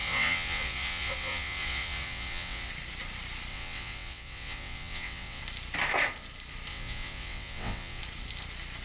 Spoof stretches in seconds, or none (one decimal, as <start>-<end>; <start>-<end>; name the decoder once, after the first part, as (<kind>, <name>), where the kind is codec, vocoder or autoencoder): 0.0-2.7 (vocoder, WaveNeXt); 3.5-5.4; 6.7-8.0